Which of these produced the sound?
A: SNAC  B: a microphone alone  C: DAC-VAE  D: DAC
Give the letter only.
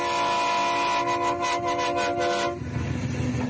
B